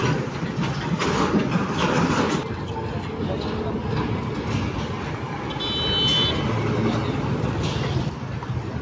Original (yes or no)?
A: yes